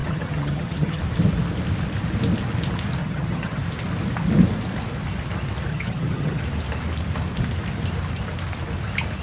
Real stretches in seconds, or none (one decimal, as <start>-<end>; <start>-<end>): 1.0-3.0; 3.6-5.7; 6.4-9.2